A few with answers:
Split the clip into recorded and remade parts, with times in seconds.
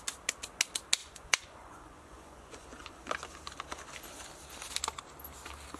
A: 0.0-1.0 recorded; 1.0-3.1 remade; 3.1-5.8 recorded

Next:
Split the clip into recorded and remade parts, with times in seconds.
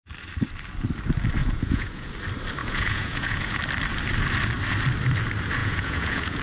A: 0.0-1.4 recorded; 1.4-2.1 remade; 2.1-2.6 recorded; 2.6-3.6 remade; 3.6-5.6 recorded; 5.6-6.4 remade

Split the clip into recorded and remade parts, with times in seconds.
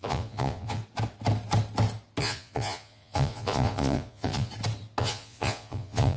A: 0.0-0.8 remade; 0.8-2.2 recorded; 2.2-4.5 remade; 4.5-5.0 recorded; 5.0-6.2 remade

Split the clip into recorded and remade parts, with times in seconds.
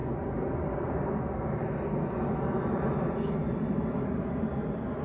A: 0.0-5.0 recorded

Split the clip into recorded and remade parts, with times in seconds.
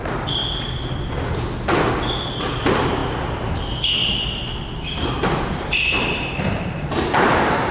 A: 0.0-7.7 recorded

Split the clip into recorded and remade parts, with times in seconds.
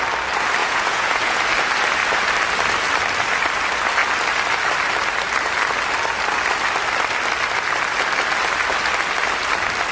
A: 0.0-0.6 recorded; 0.6-1.4 remade; 1.4-9.9 recorded